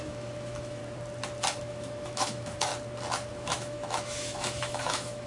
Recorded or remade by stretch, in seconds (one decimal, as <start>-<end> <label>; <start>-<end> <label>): 0.0-0.8 remade; 0.8-1.6 recorded; 1.6-2.7 remade; 2.7-3.3 recorded; 3.3-5.3 remade